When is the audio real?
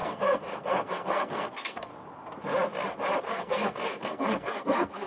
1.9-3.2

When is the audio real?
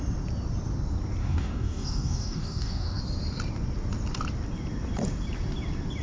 0.0-1.2; 3.0-6.0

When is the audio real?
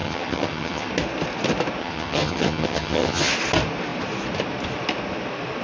0.9-1.8; 3.3-5.6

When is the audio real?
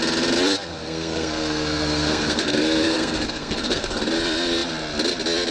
0.0-0.7; 4.0-5.5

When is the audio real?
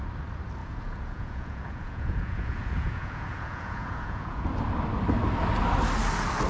0.0-0.6; 4.5-6.5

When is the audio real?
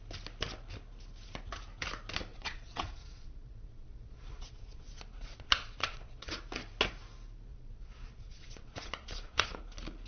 0.0-2.3; 6.4-7.5; 9.6-10.1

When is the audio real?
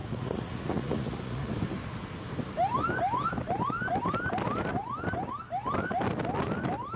1.5-7.0